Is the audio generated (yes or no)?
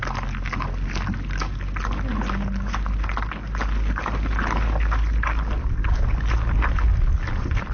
no